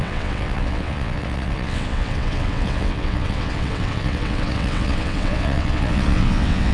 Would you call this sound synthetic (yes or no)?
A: yes